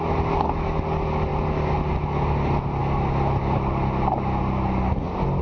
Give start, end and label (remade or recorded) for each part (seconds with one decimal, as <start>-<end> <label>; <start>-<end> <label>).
0.0-5.4 recorded